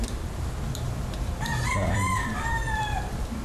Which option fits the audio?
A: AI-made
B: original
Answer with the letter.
A